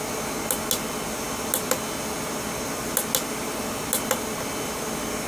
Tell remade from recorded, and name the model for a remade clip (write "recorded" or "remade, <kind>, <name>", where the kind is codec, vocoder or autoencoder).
recorded